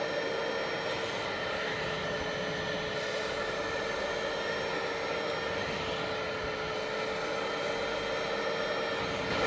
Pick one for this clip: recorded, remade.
recorded